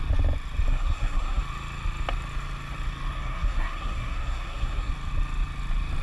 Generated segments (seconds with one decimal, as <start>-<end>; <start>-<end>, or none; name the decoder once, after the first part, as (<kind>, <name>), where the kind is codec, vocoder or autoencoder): 0.7-1.4 (codec, SNAC); 3.1-4.9